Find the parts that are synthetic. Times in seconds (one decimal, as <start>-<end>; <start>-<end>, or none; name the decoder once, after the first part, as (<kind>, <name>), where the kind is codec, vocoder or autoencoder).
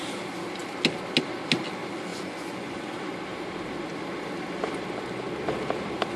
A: 2.1-2.8 (vocoder, Vocos)